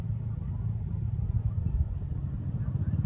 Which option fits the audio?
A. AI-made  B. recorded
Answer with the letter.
B